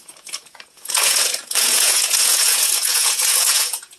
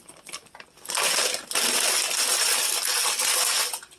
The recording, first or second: second